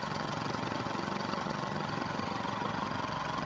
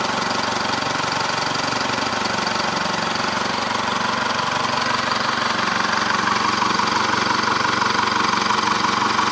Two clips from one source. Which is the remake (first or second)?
first